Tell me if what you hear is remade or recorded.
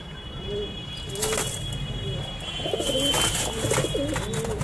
recorded